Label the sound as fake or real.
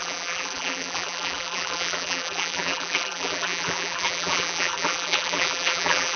fake